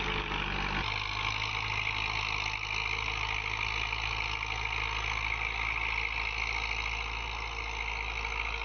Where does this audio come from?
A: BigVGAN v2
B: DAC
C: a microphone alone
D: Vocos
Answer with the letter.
C